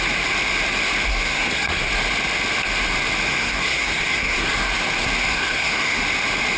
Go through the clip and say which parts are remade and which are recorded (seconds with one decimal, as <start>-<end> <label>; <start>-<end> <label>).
0.0-1.1 recorded; 1.1-1.9 remade; 1.9-3.3 recorded; 3.3-4.7 remade; 4.7-5.3 recorded; 5.3-6.0 remade; 6.0-6.6 recorded